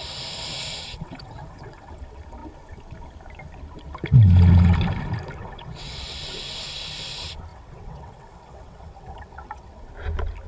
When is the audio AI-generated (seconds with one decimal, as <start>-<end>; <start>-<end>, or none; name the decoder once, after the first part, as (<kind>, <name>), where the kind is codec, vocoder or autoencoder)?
0.9-2.0 (vocoder, WaveNeXt); 5.4-6.2; 7.5-9.9